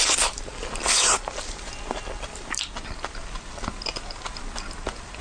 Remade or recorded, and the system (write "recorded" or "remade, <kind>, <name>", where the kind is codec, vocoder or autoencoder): recorded